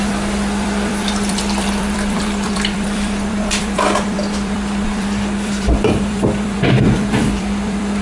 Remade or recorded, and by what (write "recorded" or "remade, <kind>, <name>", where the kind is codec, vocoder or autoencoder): remade, vocoder, BigVGAN v2